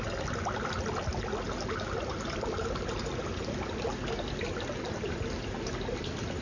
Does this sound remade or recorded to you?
recorded